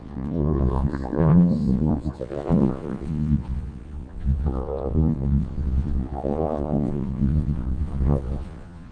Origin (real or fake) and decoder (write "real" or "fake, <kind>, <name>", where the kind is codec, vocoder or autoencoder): fake, vocoder, Vocos